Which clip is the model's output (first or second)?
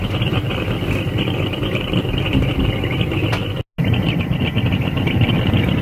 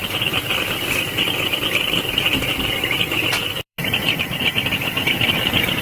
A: second